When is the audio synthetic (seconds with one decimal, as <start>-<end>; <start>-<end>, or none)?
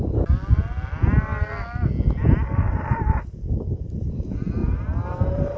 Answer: 4.6-5.6